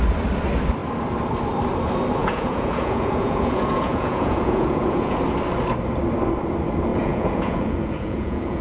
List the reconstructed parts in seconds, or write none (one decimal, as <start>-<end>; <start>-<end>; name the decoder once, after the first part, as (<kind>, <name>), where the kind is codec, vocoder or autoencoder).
2.2-5.2 (vocoder, Vocos); 6.9-8.6